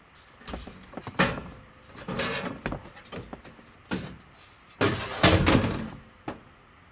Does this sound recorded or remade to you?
recorded